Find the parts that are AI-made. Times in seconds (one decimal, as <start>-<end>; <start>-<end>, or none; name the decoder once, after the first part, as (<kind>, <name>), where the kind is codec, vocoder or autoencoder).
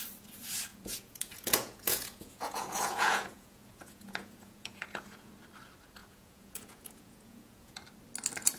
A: 0.7-5.3 (vocoder, Vocos); 6.0-7.8